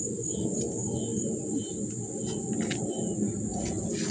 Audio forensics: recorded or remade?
recorded